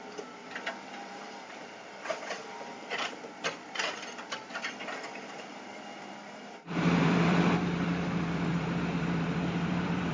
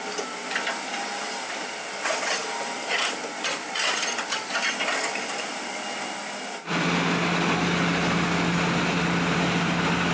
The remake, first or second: first